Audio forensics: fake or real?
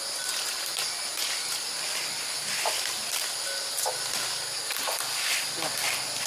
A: real